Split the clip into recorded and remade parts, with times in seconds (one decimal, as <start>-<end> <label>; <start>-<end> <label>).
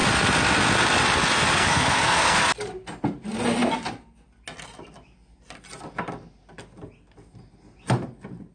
0.0-1.5 recorded; 1.5-2.4 remade; 2.4-8.5 recorded